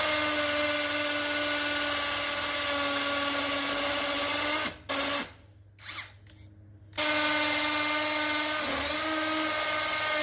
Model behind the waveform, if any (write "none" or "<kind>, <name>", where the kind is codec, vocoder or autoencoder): none